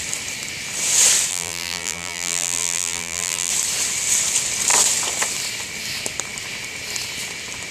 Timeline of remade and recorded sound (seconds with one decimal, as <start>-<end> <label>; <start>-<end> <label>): 0.0-1.3 recorded; 1.3-3.5 remade; 3.5-7.7 recorded